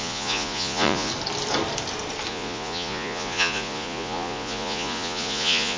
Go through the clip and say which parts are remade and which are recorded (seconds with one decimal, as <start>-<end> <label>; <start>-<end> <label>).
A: 0.0-1.1 remade; 1.1-2.3 recorded; 2.3-5.8 remade